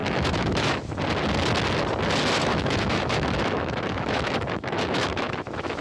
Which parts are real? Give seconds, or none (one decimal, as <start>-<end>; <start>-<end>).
0.8-2.4

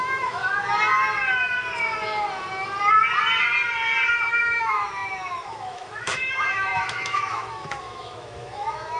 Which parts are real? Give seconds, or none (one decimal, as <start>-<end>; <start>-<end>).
0.4-4.3

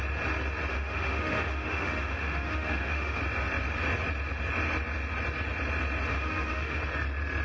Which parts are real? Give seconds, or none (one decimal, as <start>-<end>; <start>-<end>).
0.0-0.7; 3.2-6.1; 6.8-7.4

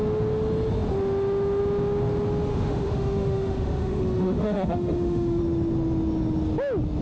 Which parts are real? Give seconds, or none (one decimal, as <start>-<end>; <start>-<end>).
0.0-2.5; 5.4-7.0